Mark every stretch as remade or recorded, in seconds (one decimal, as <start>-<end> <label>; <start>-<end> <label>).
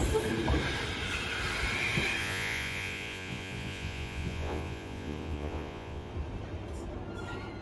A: 0.0-2.2 recorded; 2.2-6.1 remade; 6.1-7.6 recorded